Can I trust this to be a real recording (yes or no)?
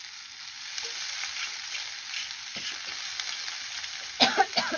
yes